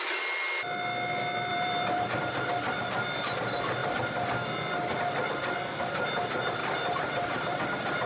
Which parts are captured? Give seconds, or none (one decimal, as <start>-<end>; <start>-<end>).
0.0-1.5; 2.2-3.8; 4.5-6.6; 7.6-8.1